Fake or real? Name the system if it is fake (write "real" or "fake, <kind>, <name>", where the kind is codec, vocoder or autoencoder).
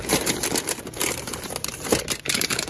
fake, vocoder, BigVGAN v2